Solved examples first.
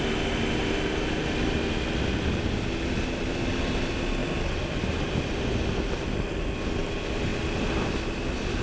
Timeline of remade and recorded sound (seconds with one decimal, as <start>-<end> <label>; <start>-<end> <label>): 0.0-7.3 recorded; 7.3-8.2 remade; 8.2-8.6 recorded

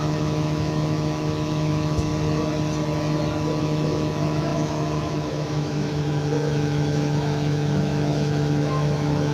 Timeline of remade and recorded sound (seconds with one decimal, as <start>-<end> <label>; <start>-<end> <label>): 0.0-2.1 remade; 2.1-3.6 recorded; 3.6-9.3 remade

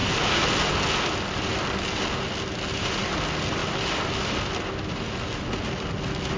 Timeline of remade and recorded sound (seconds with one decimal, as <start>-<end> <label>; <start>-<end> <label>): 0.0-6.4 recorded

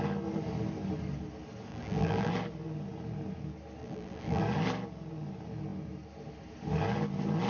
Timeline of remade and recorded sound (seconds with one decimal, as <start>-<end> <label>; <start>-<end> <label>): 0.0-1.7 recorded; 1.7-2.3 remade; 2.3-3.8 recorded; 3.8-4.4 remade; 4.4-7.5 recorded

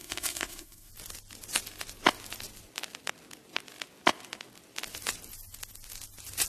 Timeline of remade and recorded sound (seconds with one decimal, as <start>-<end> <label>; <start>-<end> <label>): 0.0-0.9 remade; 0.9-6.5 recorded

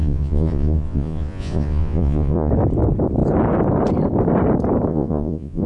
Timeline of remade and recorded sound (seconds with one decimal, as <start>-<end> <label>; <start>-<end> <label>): 0.0-2.5 remade; 2.5-4.9 recorded; 4.9-5.7 remade